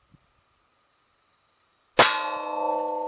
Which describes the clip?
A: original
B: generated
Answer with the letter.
A